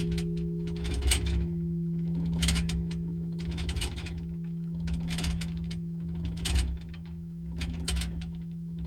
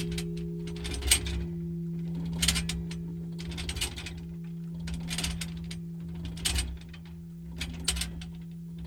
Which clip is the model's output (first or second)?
first